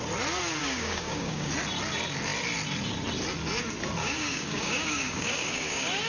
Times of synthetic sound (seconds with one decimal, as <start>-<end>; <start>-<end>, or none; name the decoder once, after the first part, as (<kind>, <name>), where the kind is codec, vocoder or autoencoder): 0.6-1.5 (codec, DAC); 4.0-6.1